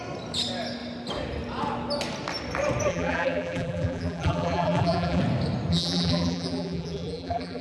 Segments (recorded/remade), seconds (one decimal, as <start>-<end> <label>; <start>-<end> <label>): 0.0-2.9 recorded; 2.9-5.2 remade; 5.2-5.7 recorded; 5.7-7.6 remade